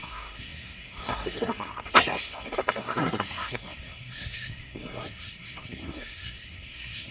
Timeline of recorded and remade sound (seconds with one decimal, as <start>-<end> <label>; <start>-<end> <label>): 0.0-7.1 remade